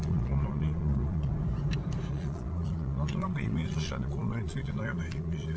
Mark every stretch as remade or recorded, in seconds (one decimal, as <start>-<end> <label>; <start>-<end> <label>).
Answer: 0.0-1.3 remade; 1.3-2.1 recorded; 2.1-5.6 remade